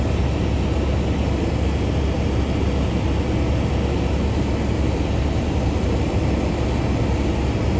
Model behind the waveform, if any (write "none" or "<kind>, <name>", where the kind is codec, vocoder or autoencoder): none